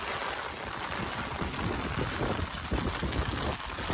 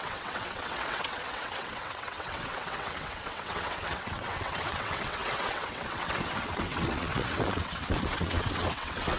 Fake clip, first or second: second